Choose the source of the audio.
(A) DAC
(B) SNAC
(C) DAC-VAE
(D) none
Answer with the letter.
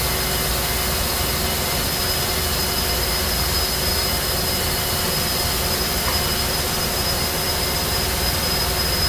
D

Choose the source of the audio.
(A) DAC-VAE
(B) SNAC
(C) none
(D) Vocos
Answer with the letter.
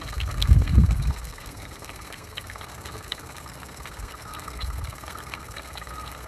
B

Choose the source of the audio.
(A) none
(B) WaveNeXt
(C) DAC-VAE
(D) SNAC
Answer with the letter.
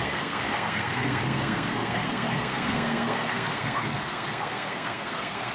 D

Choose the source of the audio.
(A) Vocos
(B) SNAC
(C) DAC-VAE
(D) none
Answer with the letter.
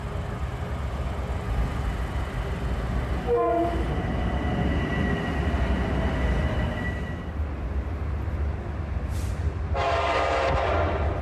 D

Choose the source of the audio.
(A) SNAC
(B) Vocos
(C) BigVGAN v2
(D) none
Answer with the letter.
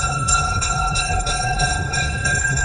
A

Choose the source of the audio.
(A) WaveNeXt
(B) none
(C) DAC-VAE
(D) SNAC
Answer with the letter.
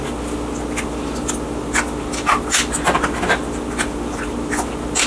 B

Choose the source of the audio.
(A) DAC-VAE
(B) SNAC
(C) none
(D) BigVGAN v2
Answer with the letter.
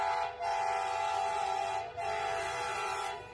C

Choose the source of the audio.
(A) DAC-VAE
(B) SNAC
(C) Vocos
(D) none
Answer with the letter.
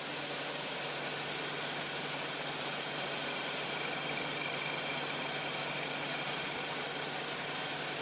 D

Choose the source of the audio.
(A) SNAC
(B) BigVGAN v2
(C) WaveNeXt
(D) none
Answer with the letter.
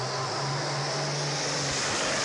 D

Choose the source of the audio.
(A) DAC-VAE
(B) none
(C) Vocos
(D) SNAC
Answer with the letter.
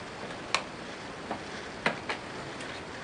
B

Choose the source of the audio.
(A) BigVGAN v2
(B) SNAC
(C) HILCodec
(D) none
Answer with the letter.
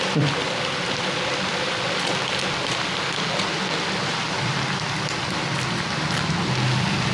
D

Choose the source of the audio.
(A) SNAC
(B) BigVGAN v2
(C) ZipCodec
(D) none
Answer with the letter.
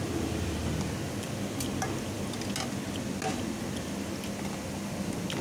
D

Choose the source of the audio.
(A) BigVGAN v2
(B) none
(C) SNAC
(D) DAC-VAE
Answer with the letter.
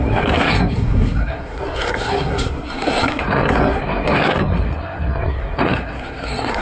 C